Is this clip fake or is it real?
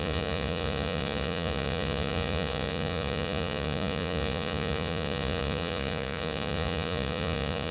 fake